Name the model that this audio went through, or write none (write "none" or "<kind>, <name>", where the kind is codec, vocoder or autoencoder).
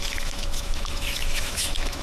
autoencoder, DAC-VAE